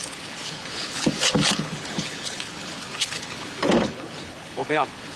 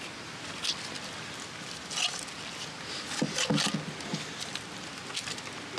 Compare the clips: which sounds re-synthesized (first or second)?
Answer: first